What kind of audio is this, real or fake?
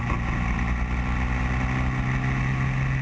real